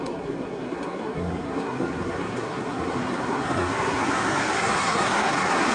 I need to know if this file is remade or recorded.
remade